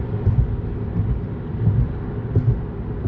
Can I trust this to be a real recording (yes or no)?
yes